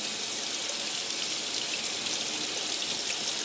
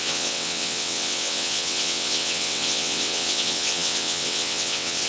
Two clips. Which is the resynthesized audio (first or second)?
second